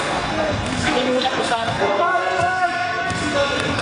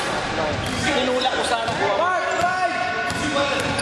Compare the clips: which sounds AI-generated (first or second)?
first